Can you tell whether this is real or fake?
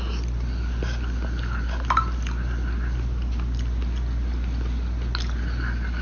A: real